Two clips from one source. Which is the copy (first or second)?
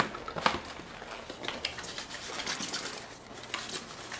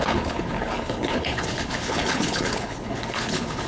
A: second